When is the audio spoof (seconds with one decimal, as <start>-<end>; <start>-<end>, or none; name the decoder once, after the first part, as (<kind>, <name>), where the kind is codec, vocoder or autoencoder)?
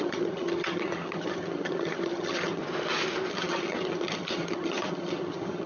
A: 0.0-2.6 (vocoder, HiFi-GAN); 3.3-5.7